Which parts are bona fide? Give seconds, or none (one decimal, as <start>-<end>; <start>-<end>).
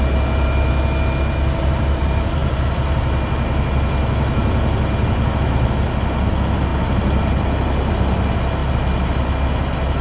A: 0.0-10.0